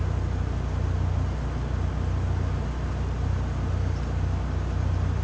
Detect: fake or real real